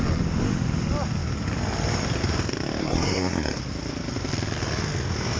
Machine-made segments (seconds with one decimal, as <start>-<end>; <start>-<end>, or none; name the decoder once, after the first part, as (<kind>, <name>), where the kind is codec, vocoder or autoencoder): 2.8-3.6 (codec, SNAC)